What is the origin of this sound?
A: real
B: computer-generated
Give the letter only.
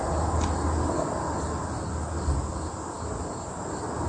A